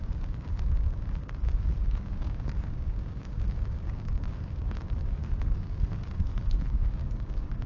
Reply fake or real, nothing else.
fake